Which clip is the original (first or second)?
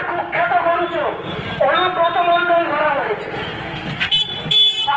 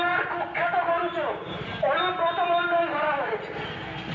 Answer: second